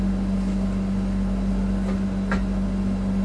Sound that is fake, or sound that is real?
real